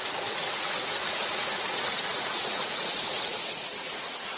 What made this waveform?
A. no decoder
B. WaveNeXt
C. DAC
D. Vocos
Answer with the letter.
D